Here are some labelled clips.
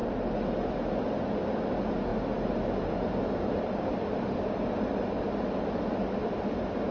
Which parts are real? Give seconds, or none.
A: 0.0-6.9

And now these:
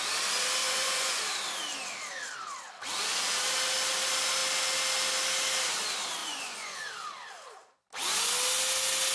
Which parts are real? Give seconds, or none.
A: 0.0-0.6; 1.2-6.2; 6.9-9.1

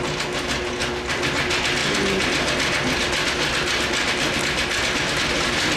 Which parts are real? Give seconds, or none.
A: 0.0-5.8

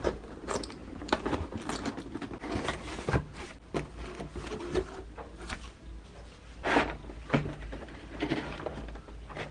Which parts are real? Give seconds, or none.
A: none